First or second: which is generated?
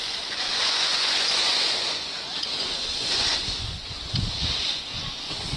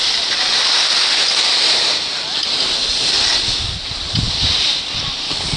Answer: first